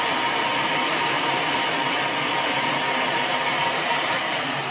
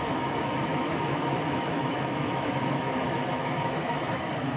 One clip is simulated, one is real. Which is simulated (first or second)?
second